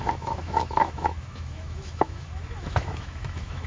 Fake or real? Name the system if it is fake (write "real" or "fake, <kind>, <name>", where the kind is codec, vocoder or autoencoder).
fake, autoencoder, DAC-VAE